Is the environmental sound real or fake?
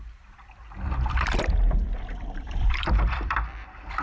fake